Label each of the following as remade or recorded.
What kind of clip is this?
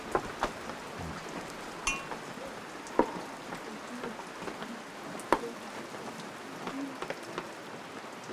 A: recorded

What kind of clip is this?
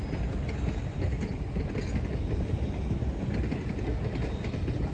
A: recorded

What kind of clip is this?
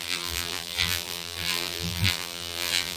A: remade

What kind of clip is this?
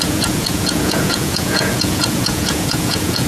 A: remade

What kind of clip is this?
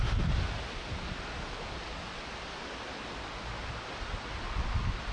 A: recorded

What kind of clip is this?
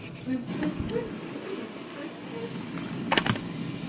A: recorded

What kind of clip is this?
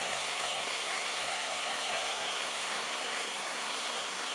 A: remade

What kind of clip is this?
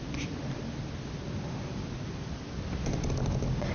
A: recorded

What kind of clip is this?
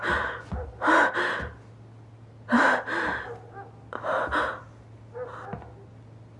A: recorded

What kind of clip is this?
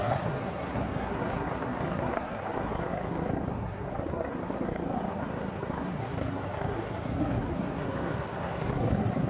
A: remade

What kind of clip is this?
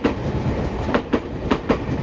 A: recorded